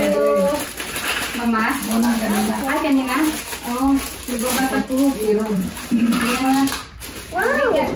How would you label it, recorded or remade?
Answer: remade